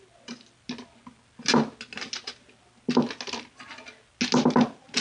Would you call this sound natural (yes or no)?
yes